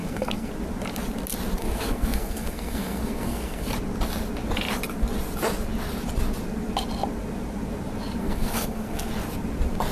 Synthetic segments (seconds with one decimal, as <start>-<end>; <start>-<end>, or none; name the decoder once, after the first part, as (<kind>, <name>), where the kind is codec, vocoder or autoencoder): 0.0-0.5 (codec, SNAC); 1.6-3.7; 8.2-9.1